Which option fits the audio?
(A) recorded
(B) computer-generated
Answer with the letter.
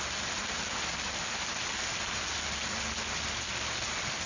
A